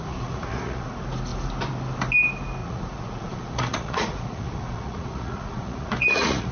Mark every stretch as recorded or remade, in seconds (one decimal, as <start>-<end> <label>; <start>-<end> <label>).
0.0-0.9 remade; 0.9-2.6 recorded; 2.6-6.5 remade